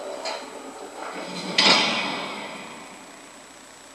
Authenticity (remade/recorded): recorded